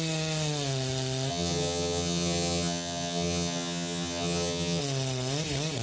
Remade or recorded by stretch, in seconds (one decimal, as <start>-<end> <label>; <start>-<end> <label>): 0.0-1.3 recorded; 1.3-4.8 remade; 4.8-5.8 recorded